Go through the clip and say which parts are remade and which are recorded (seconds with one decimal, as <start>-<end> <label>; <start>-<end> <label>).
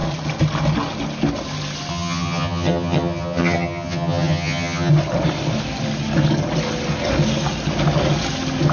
0.0-1.9 recorded; 1.9-4.9 remade; 4.9-8.7 recorded